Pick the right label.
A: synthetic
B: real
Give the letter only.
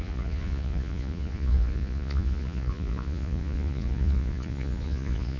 A